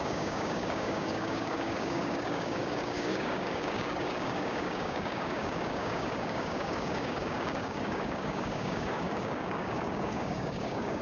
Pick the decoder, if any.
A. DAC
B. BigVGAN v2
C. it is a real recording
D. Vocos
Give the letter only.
A